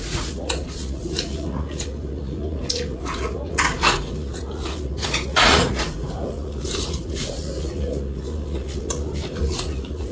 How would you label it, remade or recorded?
remade